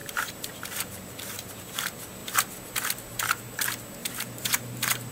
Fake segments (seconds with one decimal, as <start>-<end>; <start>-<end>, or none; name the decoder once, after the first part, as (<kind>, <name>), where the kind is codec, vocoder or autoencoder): 0.0-1.5 (vocoder, BigVGAN v2); 4.0-5.1